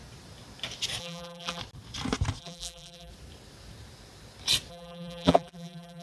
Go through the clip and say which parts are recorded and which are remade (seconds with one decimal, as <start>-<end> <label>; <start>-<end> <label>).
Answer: 0.0-1.0 recorded; 1.0-1.6 remade; 1.6-2.4 recorded; 2.4-3.1 remade; 3.1-4.7 recorded; 4.7-6.0 remade